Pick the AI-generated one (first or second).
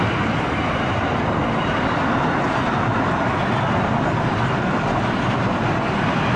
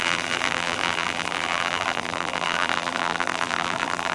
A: second